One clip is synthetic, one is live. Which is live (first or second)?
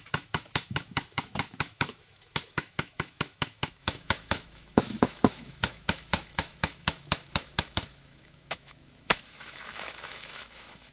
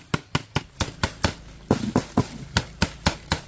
second